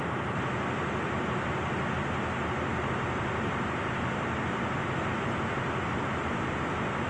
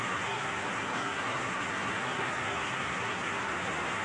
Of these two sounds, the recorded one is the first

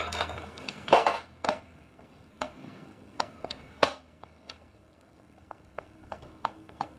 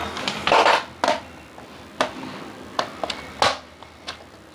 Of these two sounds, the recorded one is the second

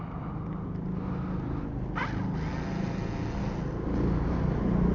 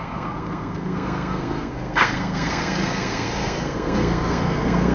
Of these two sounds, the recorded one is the first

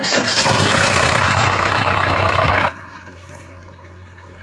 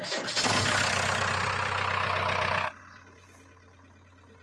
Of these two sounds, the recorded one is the second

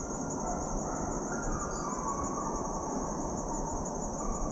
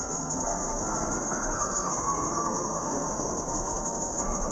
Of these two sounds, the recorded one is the first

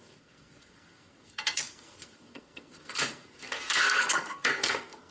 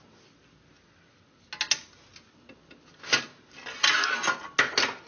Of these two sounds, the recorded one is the second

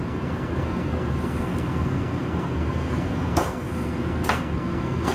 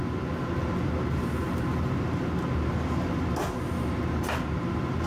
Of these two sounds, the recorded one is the second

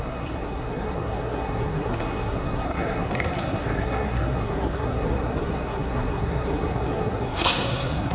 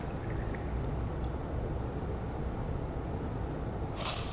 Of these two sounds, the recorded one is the second